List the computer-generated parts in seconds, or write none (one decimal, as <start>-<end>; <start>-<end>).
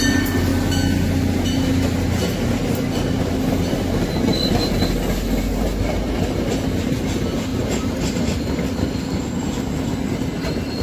none